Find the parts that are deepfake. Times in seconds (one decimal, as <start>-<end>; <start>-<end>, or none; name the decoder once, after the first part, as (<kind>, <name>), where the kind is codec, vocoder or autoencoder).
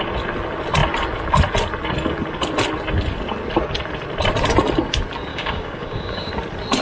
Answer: 5.3-6.3 (codec, DAC)